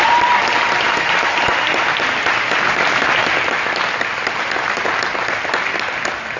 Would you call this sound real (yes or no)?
yes